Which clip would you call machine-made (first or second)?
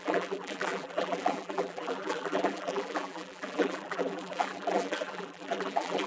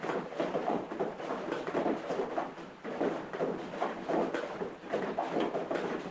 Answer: first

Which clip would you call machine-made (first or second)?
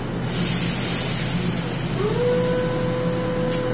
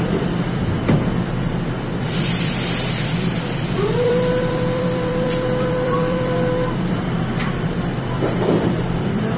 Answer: second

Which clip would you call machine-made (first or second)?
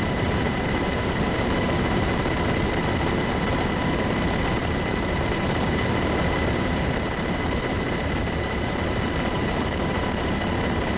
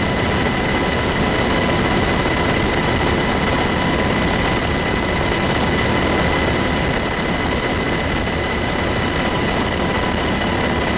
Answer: first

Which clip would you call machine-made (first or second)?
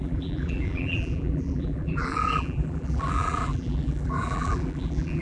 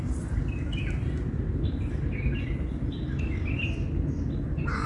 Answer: first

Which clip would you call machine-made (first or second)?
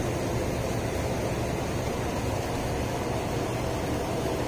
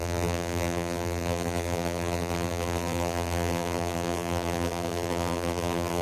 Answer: second